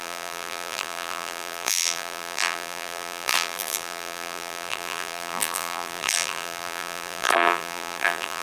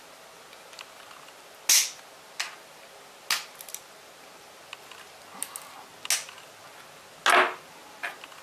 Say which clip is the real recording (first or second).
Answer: second